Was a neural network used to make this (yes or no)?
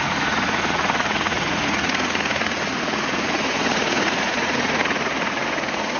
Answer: yes